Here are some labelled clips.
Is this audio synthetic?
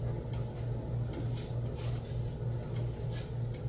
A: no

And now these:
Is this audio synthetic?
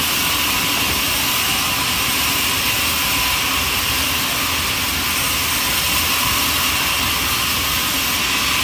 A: no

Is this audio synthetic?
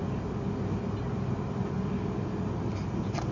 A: no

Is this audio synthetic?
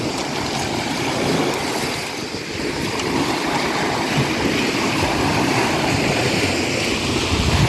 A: no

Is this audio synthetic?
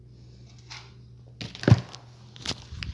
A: no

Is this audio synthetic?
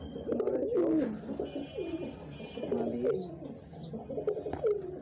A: yes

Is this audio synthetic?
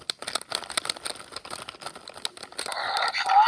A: no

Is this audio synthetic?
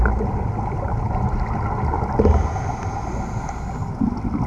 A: no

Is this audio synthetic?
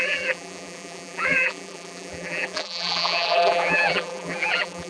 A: yes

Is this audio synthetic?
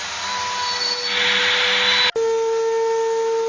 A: no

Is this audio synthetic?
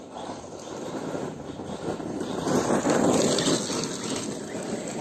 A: no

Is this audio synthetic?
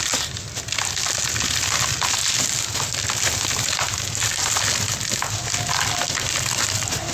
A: no